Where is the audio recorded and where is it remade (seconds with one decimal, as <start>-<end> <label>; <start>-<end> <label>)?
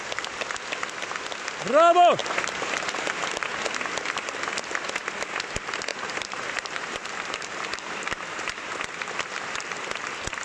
0.0-2.2 recorded; 2.2-3.5 remade; 3.5-5.9 recorded; 5.9-8.8 remade; 8.8-10.4 recorded